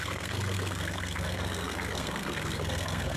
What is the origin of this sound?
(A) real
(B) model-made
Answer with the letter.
B